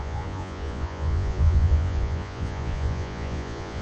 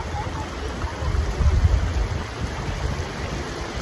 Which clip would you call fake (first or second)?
first